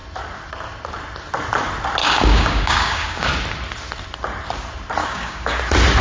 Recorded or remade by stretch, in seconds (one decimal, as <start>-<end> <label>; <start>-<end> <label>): 0.0-2.0 recorded; 2.0-3.3 remade; 3.3-5.0 recorded; 5.0-5.6 remade; 5.6-6.0 recorded